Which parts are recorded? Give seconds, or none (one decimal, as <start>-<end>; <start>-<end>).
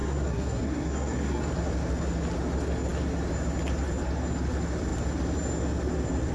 1.5-6.3